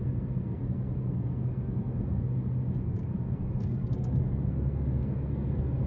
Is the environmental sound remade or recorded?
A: remade